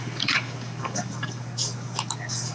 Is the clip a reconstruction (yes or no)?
yes